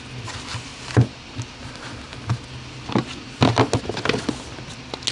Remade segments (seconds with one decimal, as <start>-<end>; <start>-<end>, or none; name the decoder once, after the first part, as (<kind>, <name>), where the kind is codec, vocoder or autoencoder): none